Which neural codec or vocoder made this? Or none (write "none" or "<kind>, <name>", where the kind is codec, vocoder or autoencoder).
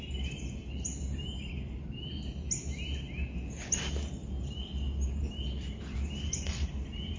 none